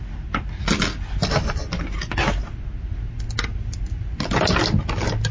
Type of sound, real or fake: real